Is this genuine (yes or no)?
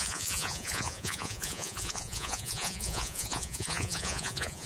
no